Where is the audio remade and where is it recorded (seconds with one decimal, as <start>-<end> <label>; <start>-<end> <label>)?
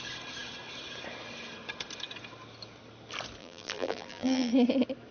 0.0-3.4 recorded; 3.4-4.5 remade; 4.5-5.1 recorded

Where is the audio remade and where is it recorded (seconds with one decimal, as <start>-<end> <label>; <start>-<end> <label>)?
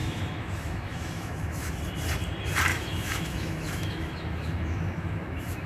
0.0-1.7 remade; 1.7-2.7 recorded; 2.7-5.7 remade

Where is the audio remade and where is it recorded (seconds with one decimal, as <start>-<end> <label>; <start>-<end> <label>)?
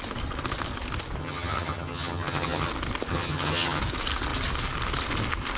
0.0-1.2 recorded; 1.2-2.7 remade; 2.7-3.1 recorded; 3.1-3.8 remade; 3.8-5.6 recorded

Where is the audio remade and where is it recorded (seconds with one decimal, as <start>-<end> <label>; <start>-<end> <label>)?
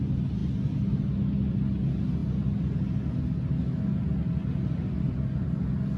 0.0-6.0 recorded